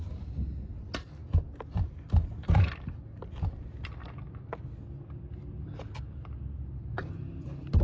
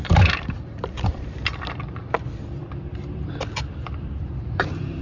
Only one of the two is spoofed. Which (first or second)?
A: second